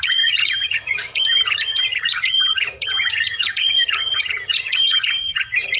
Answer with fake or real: fake